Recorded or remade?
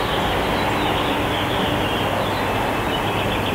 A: recorded